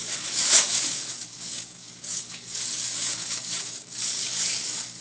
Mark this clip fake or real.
fake